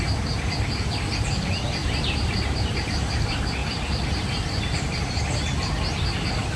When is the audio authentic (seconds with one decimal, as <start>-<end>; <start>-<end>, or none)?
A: 0.0-1.8; 2.9-3.6; 5.2-6.6